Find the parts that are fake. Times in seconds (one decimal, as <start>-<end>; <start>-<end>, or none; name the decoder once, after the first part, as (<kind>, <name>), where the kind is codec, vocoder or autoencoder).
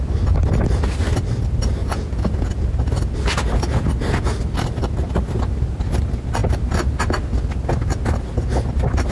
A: 1.8-2.5 (vocoder, Vocos)